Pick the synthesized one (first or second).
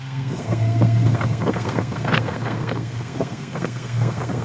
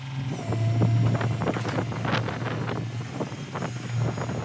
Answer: first